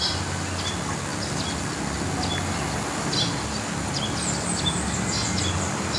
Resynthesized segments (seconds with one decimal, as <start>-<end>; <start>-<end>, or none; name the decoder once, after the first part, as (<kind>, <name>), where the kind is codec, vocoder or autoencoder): none